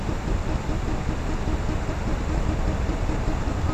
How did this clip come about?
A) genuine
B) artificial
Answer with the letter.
A